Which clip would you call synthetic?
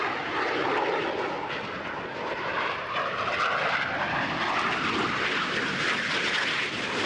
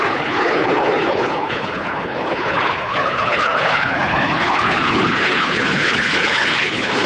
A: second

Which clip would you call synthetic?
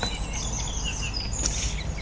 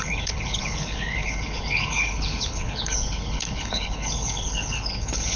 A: second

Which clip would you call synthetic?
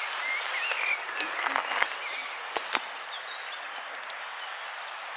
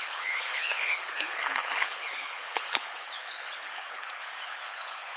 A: second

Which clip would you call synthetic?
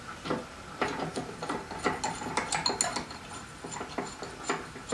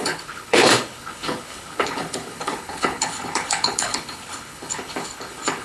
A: second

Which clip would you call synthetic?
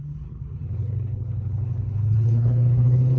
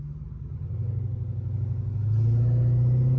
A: first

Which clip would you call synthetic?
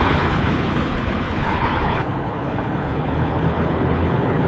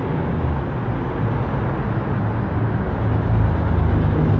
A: first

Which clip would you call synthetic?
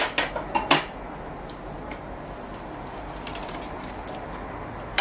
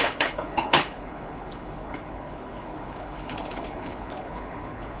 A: second